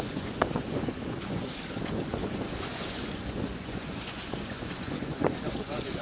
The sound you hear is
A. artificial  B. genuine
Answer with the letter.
A